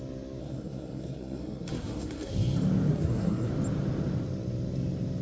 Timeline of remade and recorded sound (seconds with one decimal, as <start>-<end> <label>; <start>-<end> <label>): 0.0-0.4 recorded; 0.4-2.3 remade; 2.3-2.9 recorded; 2.9-3.5 remade; 3.5-5.2 recorded